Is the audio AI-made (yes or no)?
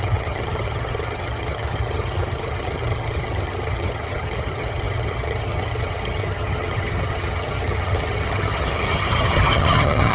yes